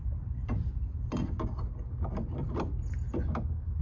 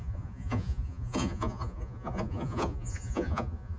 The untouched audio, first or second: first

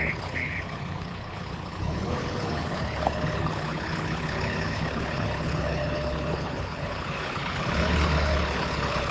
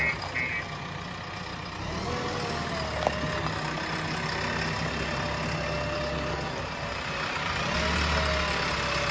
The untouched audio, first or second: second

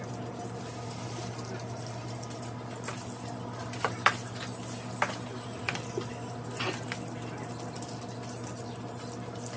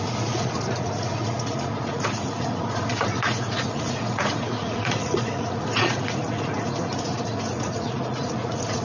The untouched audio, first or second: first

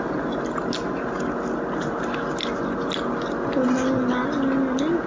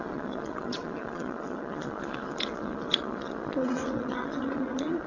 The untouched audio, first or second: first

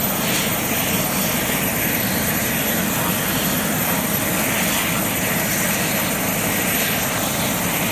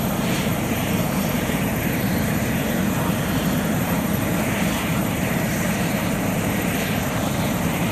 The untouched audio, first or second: first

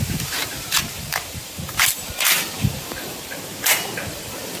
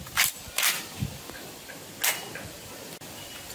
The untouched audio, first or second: second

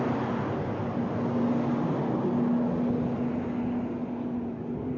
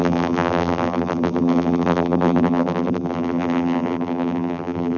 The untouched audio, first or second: first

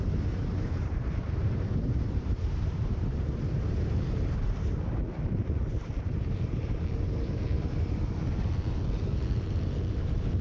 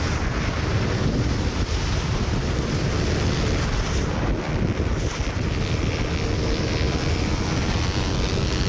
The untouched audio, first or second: second